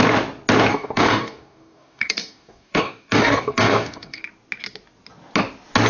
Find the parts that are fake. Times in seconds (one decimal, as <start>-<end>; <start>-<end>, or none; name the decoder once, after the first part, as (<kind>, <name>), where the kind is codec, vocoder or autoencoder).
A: 0.7-4.2 (codec, DAC)